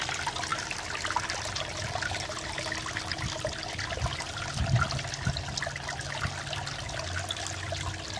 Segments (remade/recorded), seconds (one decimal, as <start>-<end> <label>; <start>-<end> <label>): 0.0-8.2 recorded